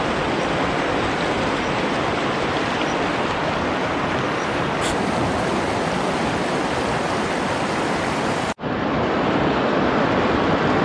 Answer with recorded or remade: recorded